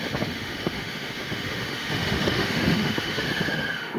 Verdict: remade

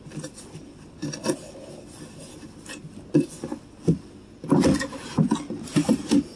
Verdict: recorded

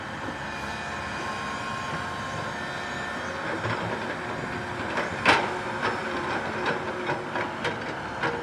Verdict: recorded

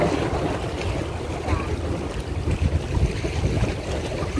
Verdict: recorded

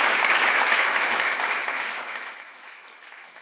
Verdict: remade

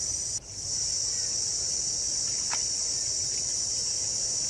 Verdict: recorded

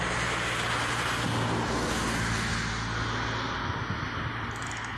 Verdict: recorded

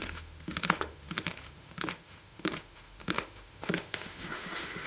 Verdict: remade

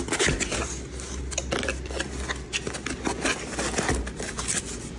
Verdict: recorded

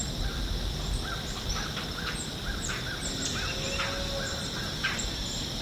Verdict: recorded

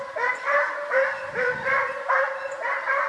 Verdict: recorded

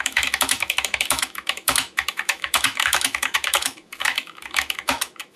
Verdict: remade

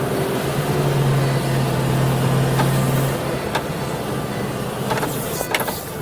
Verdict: recorded